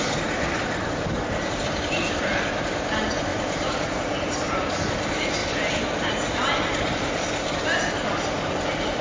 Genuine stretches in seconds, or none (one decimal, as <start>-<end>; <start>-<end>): 0.0-3.3; 4.8-9.0